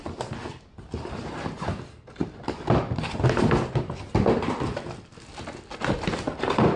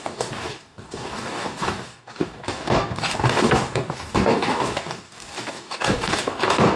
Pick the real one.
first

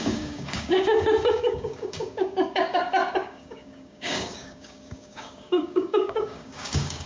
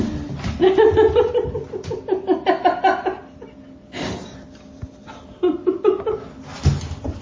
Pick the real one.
second